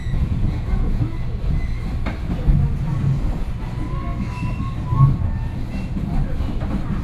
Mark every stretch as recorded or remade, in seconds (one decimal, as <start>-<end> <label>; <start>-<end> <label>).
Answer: 0.0-1.0 remade; 1.0-7.0 recorded